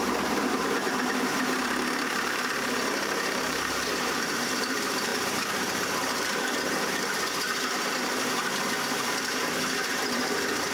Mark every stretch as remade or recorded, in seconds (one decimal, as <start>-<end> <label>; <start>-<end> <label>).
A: 0.0-10.7 remade